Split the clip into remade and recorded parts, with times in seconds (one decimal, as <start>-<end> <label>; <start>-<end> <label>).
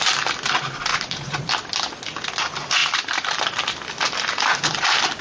0.0-0.9 recorded; 0.9-1.5 remade; 1.5-5.2 recorded